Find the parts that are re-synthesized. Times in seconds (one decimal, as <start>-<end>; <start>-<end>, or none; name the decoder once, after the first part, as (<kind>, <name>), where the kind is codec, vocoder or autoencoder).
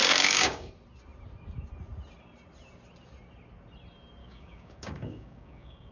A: 0.0-0.7 (codec, DAC); 4.2-5.9